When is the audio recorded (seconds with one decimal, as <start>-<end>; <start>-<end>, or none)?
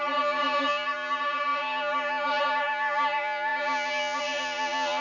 none